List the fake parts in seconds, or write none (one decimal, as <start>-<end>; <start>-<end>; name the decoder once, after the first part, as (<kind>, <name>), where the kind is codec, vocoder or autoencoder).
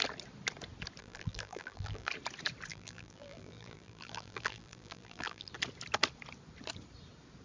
1.0-2.1 (vocoder, BigVGAN v2); 2.7-5.5